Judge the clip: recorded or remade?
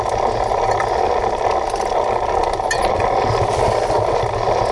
recorded